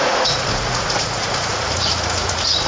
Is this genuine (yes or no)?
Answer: no